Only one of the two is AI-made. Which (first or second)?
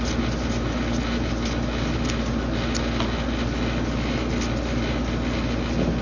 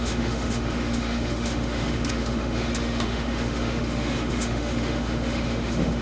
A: second